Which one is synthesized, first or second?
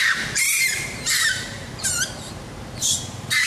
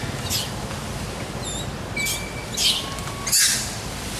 first